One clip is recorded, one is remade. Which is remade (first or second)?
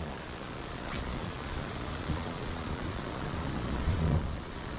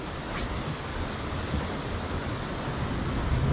first